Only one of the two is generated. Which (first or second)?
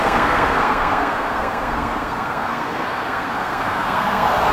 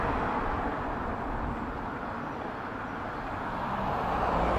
first